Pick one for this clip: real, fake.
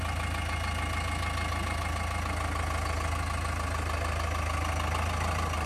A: real